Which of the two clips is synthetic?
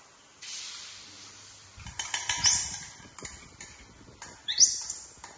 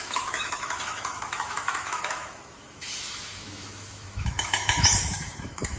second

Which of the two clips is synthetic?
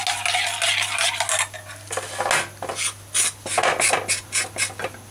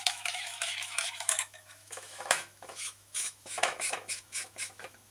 second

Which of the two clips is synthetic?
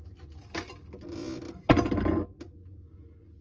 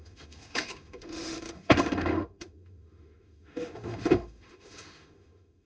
second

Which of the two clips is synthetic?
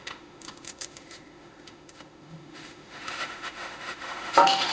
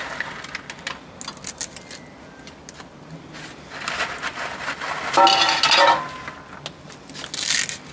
first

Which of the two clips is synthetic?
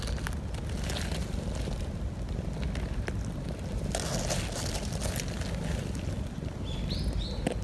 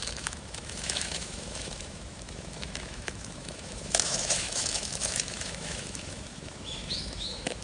second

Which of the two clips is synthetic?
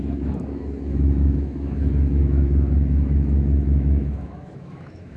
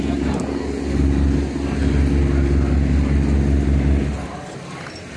first